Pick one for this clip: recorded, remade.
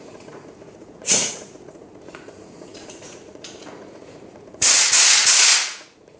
remade